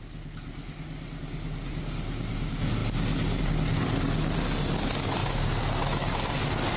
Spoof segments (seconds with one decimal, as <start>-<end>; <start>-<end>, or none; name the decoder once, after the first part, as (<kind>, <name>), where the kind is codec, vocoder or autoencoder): none